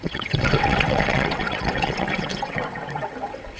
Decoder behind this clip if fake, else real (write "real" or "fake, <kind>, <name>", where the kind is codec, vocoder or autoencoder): fake, vocoder, WaveNeXt